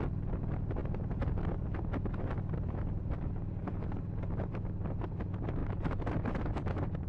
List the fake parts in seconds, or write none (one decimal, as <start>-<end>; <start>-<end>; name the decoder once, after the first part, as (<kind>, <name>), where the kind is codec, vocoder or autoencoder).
0.8-5.1 (vocoder, BigVGAN v2); 5.6-7.1